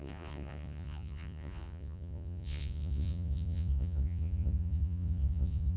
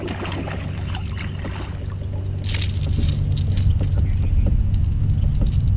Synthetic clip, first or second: first